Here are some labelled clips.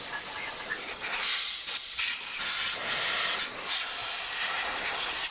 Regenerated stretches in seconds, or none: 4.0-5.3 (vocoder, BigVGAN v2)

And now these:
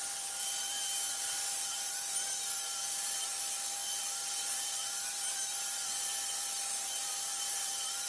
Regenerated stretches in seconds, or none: 0.0-8.1 (vocoder, BigVGAN v2)